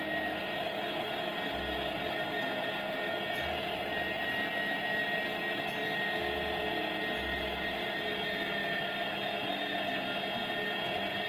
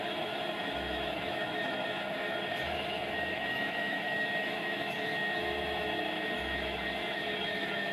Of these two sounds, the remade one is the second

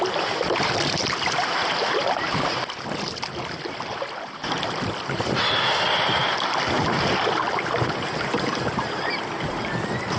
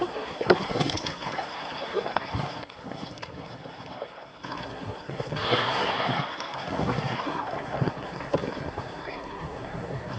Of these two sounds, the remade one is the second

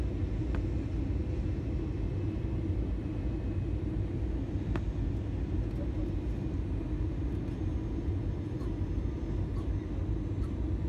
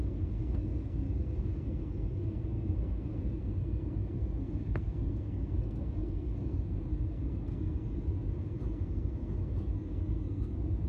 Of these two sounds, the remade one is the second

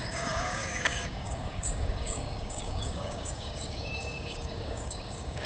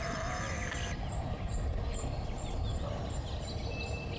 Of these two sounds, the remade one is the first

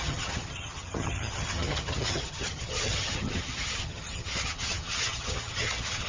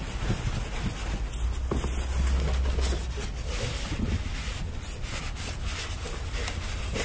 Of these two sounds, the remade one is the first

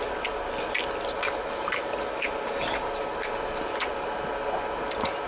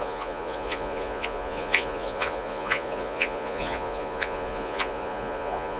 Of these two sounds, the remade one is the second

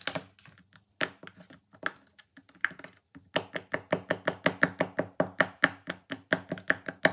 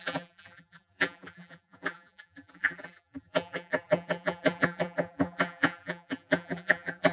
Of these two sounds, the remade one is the second